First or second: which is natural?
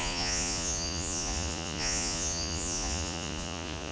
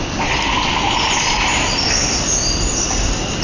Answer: second